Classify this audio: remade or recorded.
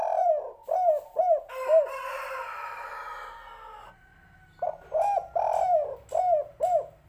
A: recorded